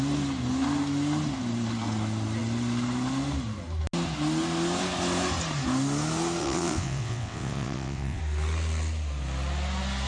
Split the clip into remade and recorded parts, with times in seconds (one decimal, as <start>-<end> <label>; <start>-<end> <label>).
0.0-6.4 recorded; 6.4-8.2 remade; 8.2-10.1 recorded